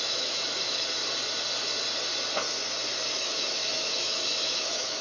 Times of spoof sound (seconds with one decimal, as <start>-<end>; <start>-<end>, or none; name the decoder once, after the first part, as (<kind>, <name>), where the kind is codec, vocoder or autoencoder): 0.0-1.0 (autoencoder, DAC-VAE); 3.1-5.0